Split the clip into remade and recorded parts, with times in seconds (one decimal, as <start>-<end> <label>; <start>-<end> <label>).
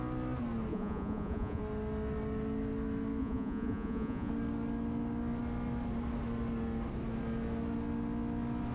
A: 0.0-0.7 recorded; 0.7-1.6 remade; 1.6-3.2 recorded; 3.2-4.3 remade; 4.3-8.7 recorded